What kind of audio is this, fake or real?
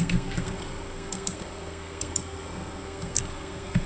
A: fake